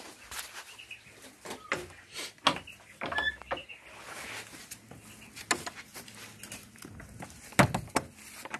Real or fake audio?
real